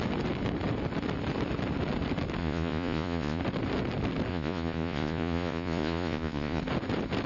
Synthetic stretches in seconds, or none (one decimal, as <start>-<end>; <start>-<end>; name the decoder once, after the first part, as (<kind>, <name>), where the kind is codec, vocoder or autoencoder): 2.4-3.4 (vocoder, Vocos); 4.3-6.6

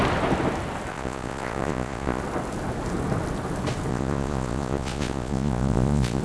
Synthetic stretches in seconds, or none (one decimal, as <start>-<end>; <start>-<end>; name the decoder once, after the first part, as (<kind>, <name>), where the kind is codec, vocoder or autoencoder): 0.9-2.2 (vocoder, Vocos); 3.9-6.2

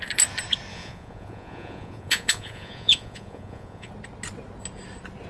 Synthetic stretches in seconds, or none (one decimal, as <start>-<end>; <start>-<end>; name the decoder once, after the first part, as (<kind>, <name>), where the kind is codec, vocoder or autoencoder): 0.7-3.9 (vocoder, Vocos)